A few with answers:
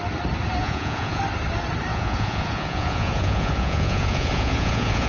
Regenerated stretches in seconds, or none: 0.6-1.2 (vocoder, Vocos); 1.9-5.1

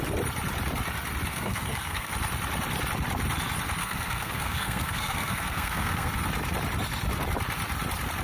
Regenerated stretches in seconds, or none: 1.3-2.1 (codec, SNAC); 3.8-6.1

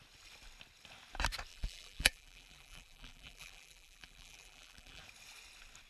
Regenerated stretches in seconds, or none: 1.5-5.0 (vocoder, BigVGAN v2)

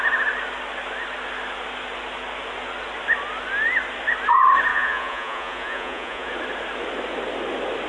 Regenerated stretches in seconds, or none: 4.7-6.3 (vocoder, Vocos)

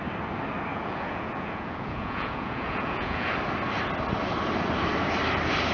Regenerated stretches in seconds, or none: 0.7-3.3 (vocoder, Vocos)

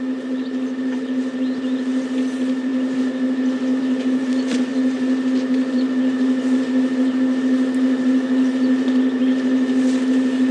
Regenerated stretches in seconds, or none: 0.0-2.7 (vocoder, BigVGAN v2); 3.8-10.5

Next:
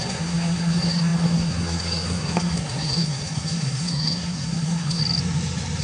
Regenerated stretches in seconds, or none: 0.0-5.0 (codec, SNAC)